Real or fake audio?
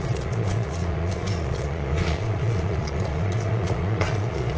fake